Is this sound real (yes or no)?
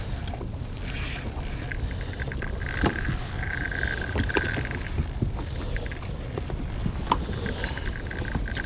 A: yes